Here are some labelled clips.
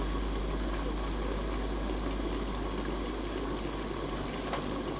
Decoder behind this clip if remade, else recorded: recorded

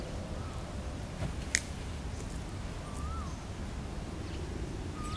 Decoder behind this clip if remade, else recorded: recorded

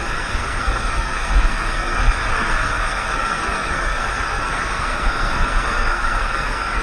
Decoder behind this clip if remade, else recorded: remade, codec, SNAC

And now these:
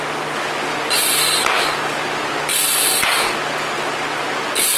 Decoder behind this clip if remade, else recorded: recorded